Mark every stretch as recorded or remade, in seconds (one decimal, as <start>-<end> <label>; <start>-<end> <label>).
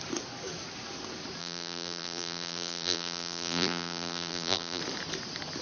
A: 0.0-1.4 recorded; 1.4-4.8 remade; 4.8-5.6 recorded